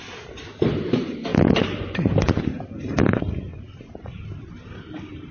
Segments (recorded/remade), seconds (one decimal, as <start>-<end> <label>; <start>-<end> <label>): 0.0-5.3 remade